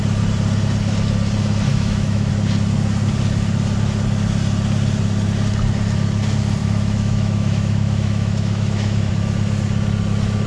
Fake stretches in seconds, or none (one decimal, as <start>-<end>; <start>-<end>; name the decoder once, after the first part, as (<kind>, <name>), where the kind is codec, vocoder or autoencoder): 1.7-2.3 (autoencoder, DAC-VAE); 6.6-9.1